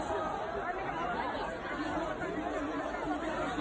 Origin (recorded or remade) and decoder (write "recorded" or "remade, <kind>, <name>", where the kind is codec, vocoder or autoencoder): recorded